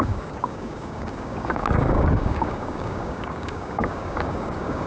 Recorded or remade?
remade